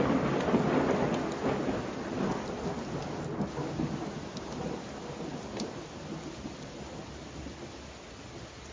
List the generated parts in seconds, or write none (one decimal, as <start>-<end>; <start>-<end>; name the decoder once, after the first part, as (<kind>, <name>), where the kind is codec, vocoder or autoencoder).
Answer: none